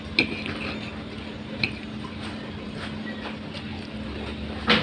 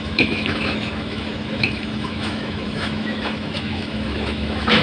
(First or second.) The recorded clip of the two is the first